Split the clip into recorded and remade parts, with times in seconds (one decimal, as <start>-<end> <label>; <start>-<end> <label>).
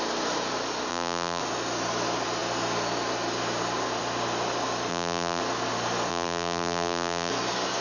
0.0-0.9 recorded; 0.9-1.4 remade; 1.4-4.9 recorded; 4.9-5.4 remade; 5.4-6.1 recorded; 6.1-7.3 remade; 7.3-7.8 recorded